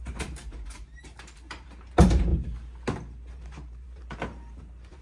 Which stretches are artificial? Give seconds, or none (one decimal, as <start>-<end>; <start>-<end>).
0.0-2.3; 3.3-5.0